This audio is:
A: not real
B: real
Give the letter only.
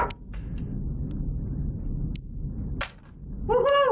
B